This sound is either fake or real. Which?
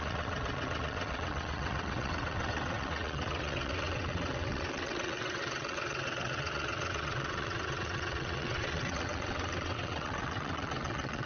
fake